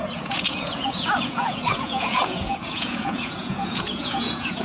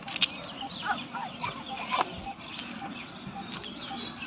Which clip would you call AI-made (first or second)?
first